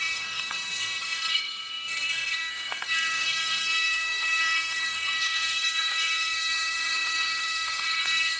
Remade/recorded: remade